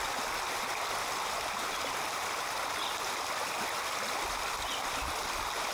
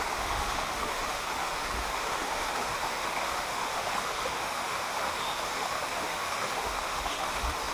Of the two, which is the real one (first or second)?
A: first